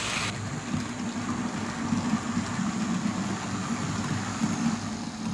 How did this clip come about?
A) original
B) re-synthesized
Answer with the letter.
A